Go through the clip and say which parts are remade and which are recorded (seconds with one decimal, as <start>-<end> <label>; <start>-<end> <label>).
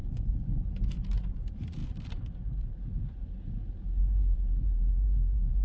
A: 0.0-0.9 recorded; 0.9-5.6 remade